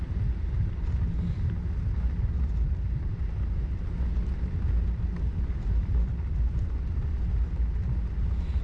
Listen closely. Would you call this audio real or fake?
real